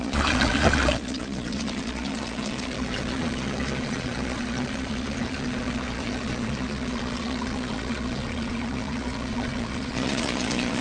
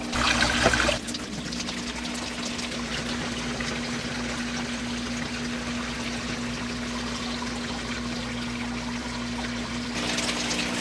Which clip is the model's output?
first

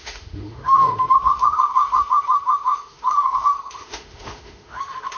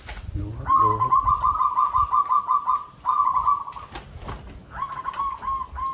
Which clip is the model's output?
first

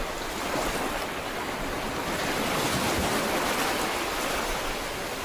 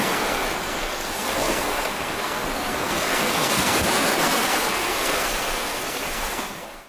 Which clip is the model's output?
second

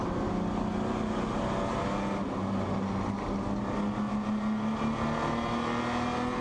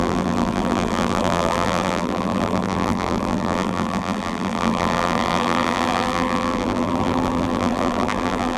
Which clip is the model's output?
second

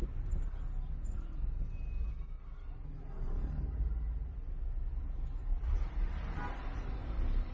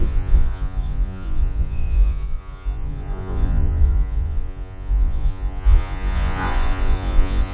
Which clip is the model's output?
second